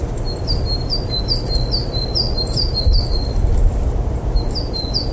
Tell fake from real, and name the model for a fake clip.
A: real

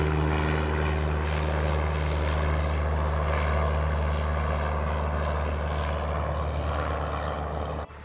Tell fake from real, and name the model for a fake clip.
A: real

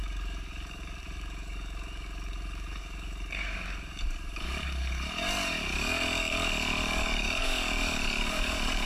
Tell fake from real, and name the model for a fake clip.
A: fake, codec, DAC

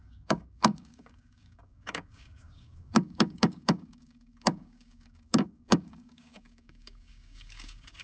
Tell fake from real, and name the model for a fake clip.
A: fake, codec, DAC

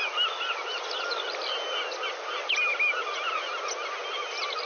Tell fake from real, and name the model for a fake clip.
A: real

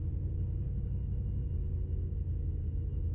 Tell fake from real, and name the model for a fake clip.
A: real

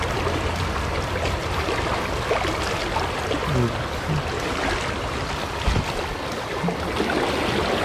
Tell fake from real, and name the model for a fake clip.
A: real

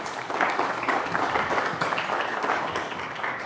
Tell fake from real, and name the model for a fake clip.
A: fake, codec, DAC